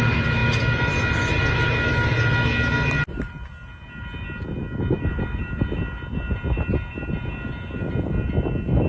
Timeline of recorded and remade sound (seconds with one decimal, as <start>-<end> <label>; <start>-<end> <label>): 0.0-8.9 recorded